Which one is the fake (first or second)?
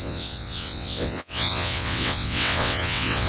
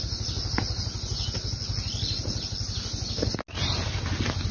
first